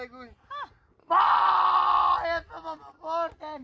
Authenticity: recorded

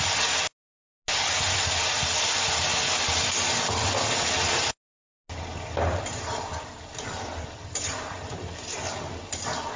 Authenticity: recorded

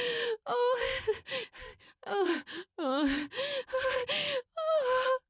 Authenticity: recorded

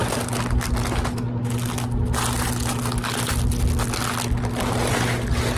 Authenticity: recorded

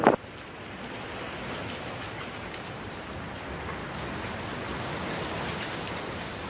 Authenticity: recorded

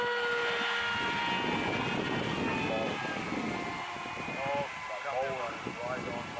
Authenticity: recorded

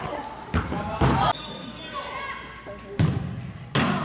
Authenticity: recorded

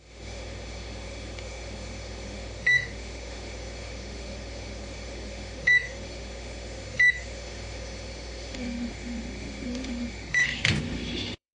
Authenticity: remade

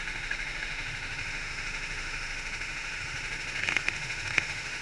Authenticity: remade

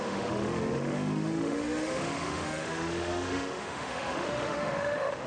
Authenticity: remade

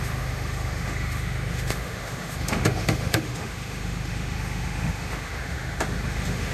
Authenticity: remade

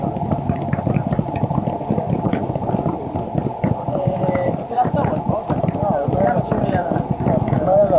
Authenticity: recorded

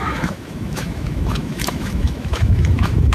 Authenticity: remade